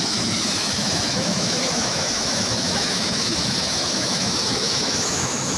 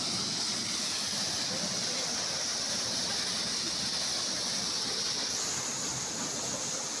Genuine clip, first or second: second